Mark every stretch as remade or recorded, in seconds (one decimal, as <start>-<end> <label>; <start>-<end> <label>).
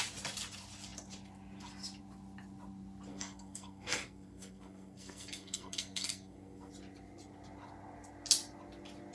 0.0-3.1 recorded; 3.1-6.7 remade; 6.7-9.1 recorded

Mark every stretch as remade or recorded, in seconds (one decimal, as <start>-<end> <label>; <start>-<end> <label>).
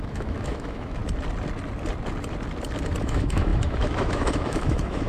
0.0-1.0 remade; 1.0-3.0 recorded; 3.0-5.1 remade